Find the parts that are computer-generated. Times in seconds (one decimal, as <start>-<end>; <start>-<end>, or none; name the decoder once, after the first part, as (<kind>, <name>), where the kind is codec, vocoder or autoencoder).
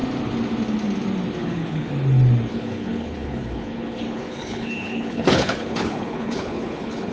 1.4-1.9 (codec, HILCodec); 2.5-7.1